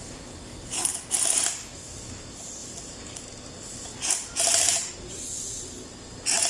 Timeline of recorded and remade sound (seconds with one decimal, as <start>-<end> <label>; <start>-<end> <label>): 0.0-6.5 recorded